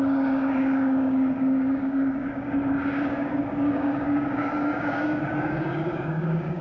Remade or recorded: remade